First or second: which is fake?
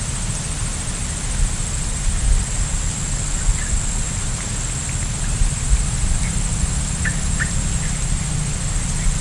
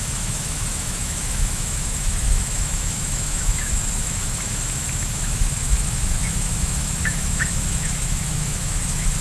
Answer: second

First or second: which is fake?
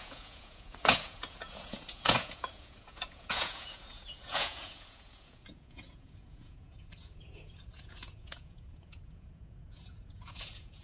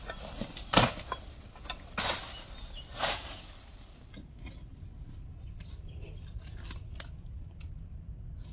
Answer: first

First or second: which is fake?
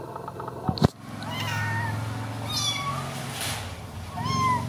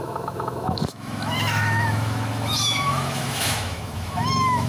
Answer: second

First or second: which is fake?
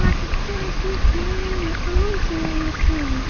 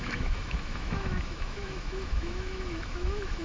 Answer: second